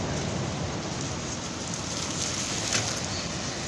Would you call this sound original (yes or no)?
yes